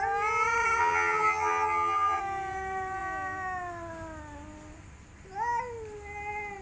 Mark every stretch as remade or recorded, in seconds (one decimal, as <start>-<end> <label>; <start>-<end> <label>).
0.0-0.8 recorded; 0.8-2.2 remade; 2.2-6.6 recorded

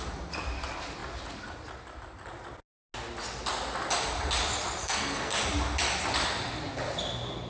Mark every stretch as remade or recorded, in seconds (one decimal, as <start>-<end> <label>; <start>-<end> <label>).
0.0-4.8 recorded; 4.8-5.4 remade; 5.4-7.5 recorded

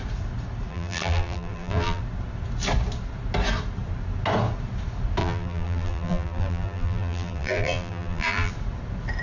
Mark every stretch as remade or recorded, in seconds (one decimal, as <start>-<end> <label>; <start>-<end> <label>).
0.0-0.7 recorded; 0.7-2.0 remade; 2.0-5.2 recorded; 5.2-8.5 remade; 8.5-9.2 recorded

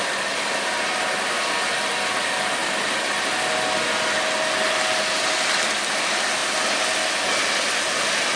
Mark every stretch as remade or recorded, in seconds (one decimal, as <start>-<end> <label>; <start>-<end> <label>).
0.0-8.4 recorded